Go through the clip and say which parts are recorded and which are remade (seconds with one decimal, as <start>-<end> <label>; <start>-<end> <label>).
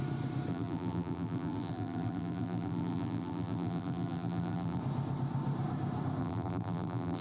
0.0-0.5 recorded; 0.5-4.8 remade; 4.8-6.2 recorded; 6.2-7.2 remade